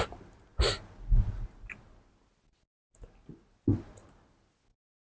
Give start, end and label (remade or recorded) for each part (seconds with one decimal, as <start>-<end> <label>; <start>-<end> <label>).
0.0-5.1 recorded